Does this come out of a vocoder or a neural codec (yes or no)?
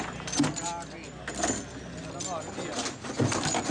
no